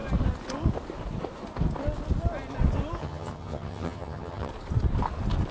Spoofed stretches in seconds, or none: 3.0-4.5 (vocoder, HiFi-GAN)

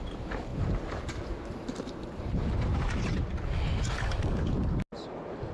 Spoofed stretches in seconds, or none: 0.5-3.2 (vocoder, BigVGAN v2)